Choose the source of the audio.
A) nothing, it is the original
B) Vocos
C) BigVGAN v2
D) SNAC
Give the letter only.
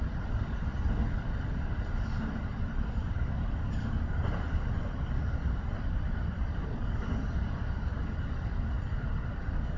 A